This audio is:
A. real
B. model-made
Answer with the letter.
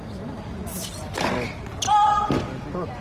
A